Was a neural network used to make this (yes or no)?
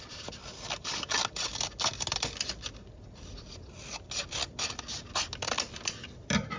no